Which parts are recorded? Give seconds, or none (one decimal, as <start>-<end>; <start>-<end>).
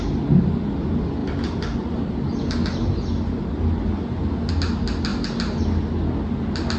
0.0-6.8